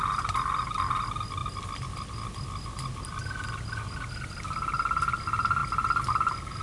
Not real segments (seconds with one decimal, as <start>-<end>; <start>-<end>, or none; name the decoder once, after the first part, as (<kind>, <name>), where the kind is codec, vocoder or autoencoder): none